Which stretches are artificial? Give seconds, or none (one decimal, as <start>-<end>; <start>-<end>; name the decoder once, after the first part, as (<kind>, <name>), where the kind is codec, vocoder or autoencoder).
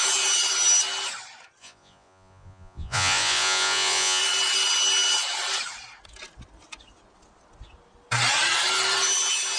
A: 1.6-4.2 (vocoder, Vocos)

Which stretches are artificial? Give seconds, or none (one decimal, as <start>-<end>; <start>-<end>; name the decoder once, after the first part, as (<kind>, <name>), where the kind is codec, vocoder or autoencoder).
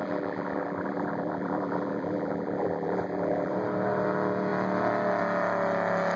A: 0.0-3.5 (vocoder, BigVGAN v2)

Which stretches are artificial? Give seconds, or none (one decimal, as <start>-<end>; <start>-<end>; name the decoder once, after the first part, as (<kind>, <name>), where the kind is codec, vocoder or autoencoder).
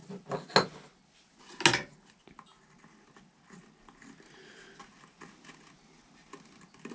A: none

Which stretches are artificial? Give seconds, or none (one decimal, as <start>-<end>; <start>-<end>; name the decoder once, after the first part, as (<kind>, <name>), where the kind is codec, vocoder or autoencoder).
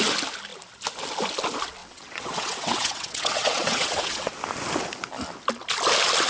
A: 1.8-4.3 (vocoder, WaveNeXt)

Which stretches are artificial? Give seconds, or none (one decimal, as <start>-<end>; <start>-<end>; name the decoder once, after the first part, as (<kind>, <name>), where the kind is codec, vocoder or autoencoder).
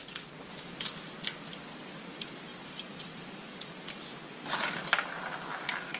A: 0.0-1.1 (vocoder, BigVGAN v2); 2.5-4.0